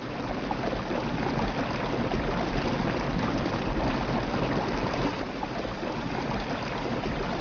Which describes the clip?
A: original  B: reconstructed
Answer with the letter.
A